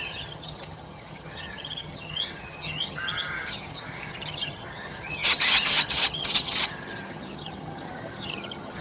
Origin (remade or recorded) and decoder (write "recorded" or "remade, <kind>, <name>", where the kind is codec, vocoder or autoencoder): remade, vocoder, HiFi-GAN